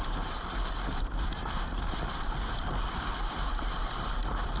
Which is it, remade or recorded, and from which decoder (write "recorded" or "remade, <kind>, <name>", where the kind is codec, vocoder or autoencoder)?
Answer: remade, vocoder, BigVGAN v2